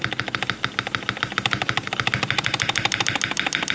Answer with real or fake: real